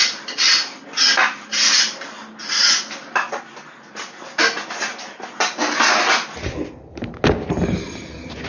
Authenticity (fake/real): real